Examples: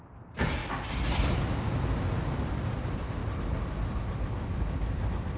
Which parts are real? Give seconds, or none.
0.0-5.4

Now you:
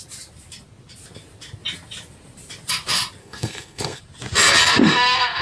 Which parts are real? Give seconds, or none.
0.0-3.2; 4.0-4.8

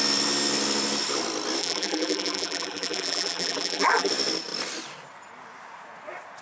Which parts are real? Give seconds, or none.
0.0-1.6; 4.1-6.4

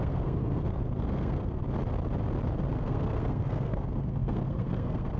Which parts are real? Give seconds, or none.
1.6-2.7

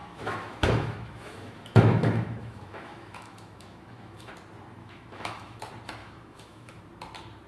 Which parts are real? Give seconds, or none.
4.3-4.8; 5.6-6.0; 6.8-7.5

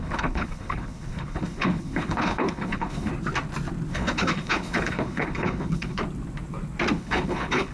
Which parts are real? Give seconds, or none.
3.1-3.9; 6.0-6.9